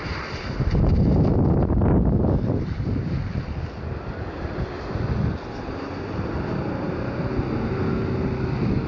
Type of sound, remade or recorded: recorded